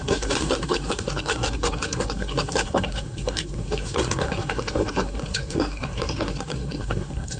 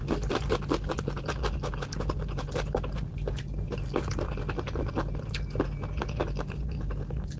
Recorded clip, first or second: second